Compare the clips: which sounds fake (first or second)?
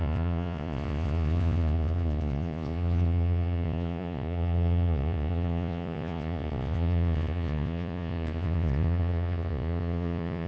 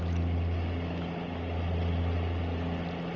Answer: first